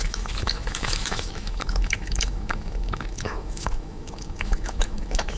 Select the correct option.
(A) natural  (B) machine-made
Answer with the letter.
B